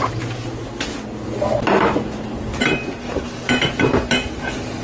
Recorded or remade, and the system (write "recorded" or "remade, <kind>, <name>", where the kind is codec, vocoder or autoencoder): recorded